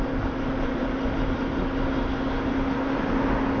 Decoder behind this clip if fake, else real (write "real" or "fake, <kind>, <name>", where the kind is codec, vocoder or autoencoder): real